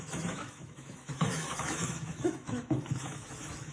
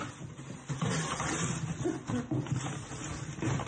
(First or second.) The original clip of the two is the second